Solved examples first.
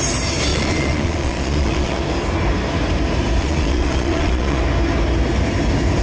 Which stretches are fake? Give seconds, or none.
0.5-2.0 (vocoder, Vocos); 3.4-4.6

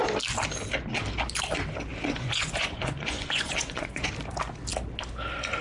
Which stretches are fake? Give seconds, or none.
1.9-4.1 (vocoder, Vocos)